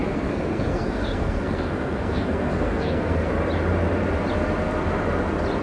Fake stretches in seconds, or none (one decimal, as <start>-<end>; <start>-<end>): 0.0-3.3